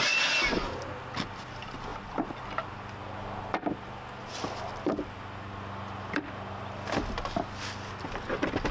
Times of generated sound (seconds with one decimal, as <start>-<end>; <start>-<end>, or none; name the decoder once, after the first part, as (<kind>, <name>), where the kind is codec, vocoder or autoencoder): none